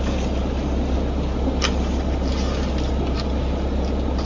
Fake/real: real